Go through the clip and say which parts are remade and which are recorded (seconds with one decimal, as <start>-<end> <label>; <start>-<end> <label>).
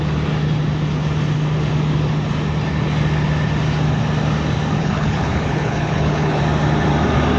0.0-4.8 recorded; 4.8-6.4 remade; 6.4-7.4 recorded